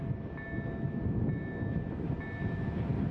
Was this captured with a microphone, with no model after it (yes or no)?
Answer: yes